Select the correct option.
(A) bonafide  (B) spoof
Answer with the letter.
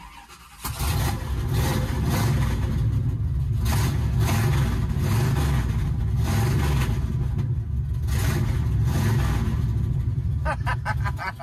A